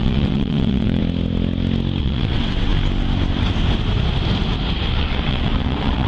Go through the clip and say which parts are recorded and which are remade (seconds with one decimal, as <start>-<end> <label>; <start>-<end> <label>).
0.0-1.0 remade; 1.0-2.0 recorded; 2.0-2.7 remade; 2.7-4.9 recorded; 4.9-6.1 remade